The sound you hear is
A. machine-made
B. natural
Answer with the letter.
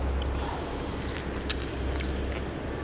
B